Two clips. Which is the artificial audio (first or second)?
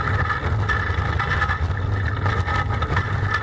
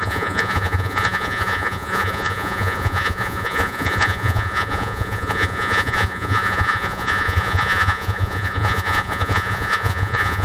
second